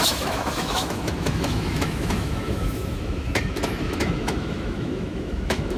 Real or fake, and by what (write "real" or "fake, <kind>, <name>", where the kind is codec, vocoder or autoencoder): fake, autoencoder, DAC-VAE